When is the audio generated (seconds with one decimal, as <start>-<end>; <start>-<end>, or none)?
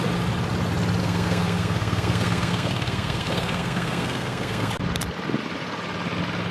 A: 1.0-4.7